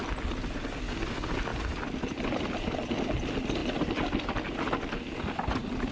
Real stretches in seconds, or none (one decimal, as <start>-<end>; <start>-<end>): 0.0-5.9